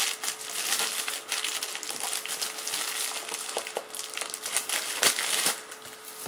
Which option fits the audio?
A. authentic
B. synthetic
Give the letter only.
A